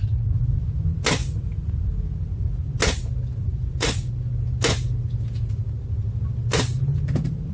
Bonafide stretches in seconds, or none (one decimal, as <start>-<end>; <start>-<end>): 0.0-1.2; 1.7-3.5; 4.1-7.5